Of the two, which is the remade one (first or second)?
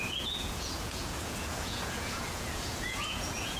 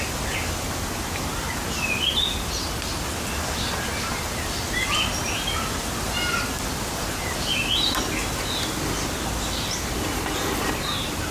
first